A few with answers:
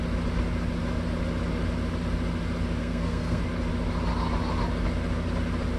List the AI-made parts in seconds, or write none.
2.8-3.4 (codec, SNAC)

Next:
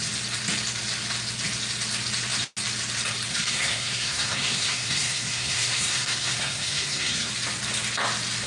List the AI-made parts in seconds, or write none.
3.3-7.3 (codec, SNAC)

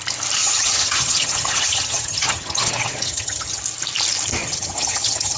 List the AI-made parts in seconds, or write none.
0.4-3.6 (vocoder, HiFi-GAN); 4.4-5.4

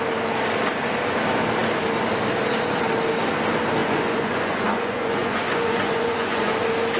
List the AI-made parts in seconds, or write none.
3.8-6.5 (vocoder, Vocos)

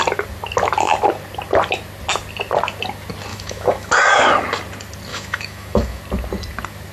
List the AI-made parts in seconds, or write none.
3.3-3.9 (autoencoder, DAC-VAE); 5.1-6.0

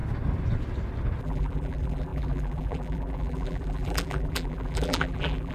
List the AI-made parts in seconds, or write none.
1.2-5.5 (vocoder, BigVGAN v2)

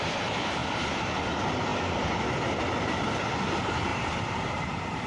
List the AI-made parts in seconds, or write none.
0.6-1.2 (vocoder, BigVGAN v2); 3.9-5.1